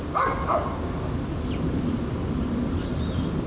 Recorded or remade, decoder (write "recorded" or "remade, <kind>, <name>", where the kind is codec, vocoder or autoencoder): recorded